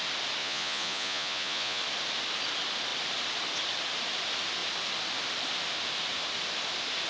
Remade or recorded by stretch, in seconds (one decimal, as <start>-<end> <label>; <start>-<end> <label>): 0.0-0.4 recorded; 0.4-1.8 remade; 1.8-7.1 recorded